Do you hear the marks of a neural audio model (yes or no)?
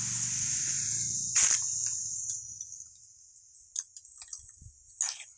no